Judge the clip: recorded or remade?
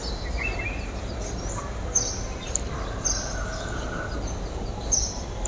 recorded